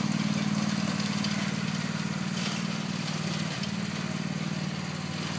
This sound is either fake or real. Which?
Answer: real